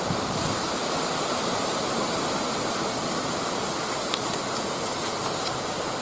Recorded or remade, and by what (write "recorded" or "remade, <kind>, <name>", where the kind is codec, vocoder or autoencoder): remade, vocoder, BigVGAN v2